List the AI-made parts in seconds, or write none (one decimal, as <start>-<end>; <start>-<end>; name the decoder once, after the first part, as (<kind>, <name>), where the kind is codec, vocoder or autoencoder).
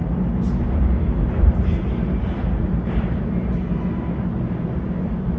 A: 0.0-3.2 (vocoder, BigVGAN v2)